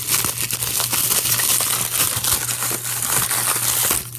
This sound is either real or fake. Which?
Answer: real